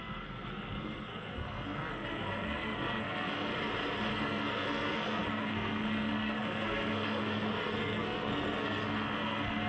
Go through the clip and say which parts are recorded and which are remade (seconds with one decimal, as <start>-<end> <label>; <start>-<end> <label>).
0.0-3.5 remade; 3.5-4.1 recorded; 4.1-9.7 remade